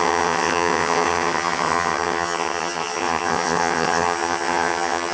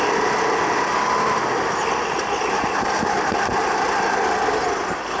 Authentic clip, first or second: second